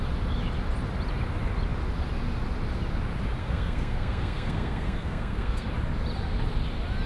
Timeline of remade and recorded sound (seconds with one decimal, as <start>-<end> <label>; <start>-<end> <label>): 0.0-3.4 recorded; 3.4-5.7 remade; 5.7-7.1 recorded